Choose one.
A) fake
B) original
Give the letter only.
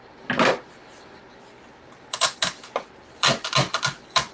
B